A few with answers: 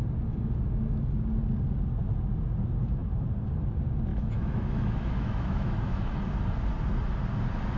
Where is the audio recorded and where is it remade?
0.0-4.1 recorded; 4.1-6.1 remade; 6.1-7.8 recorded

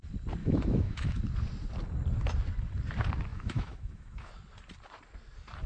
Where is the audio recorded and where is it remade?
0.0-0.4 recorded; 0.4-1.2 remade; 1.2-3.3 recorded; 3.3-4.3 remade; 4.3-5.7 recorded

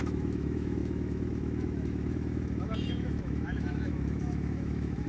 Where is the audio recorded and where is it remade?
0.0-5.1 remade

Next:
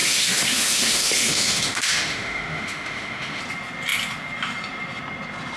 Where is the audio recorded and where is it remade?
0.0-3.4 remade; 3.4-5.6 recorded